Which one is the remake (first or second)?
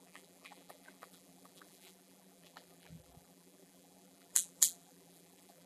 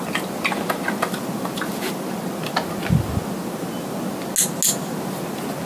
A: first